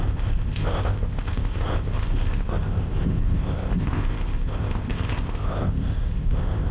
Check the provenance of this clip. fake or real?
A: fake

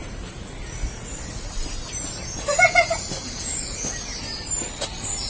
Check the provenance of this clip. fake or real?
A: real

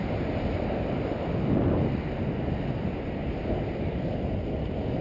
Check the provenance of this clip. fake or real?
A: real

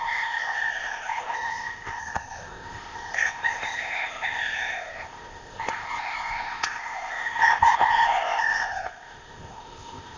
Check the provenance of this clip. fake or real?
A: fake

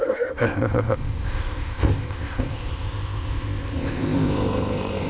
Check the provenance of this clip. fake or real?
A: fake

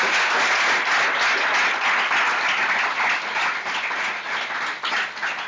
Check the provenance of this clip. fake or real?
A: real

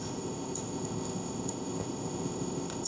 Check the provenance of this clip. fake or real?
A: fake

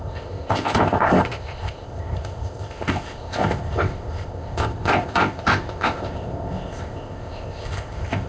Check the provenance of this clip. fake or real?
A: fake